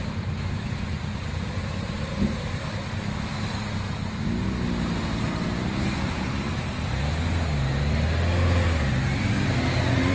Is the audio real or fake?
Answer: real